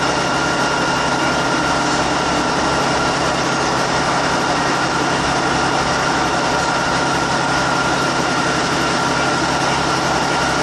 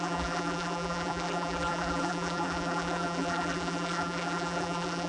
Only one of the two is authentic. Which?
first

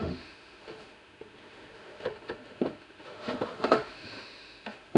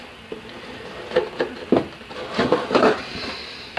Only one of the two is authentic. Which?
second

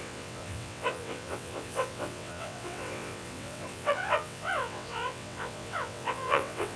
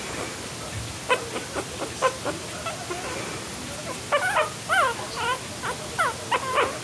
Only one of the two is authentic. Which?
second